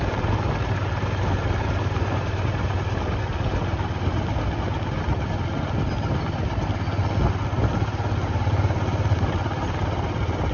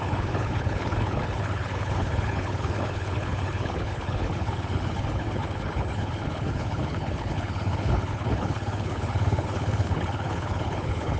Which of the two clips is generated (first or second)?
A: second